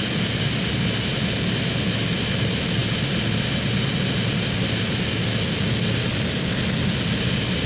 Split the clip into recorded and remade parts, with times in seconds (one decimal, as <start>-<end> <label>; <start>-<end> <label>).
0.0-7.7 recorded